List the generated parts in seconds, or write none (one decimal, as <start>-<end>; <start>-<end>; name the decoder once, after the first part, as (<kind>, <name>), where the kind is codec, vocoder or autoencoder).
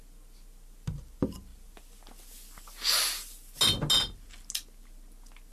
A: none